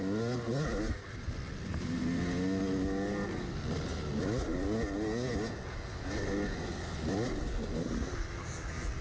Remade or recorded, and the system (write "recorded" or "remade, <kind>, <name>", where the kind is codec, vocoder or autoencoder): recorded